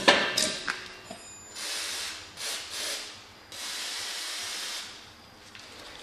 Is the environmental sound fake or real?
real